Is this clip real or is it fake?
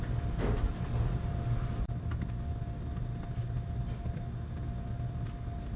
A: real